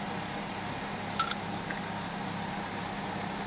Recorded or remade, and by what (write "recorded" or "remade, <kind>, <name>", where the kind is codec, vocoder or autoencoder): recorded